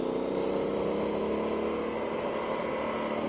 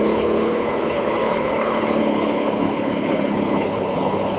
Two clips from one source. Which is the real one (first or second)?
first